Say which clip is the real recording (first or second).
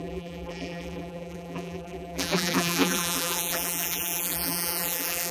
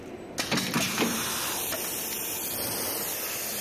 second